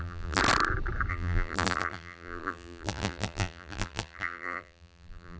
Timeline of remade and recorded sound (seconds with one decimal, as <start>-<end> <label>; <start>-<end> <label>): 0.0-0.4 remade; 0.4-1.1 recorded; 1.1-5.4 remade